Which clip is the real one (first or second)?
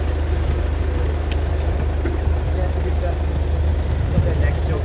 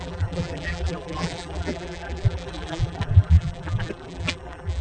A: first